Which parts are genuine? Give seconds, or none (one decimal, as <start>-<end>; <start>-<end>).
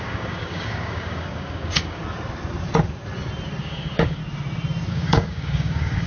2.0-3.6; 4.2-4.9